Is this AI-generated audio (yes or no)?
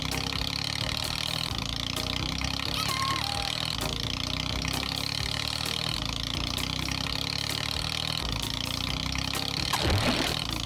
no